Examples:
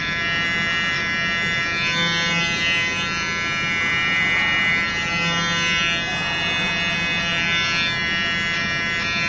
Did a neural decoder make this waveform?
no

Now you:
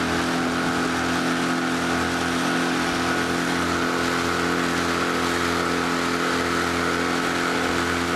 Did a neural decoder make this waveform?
no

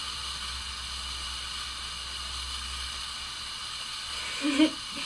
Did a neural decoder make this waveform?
no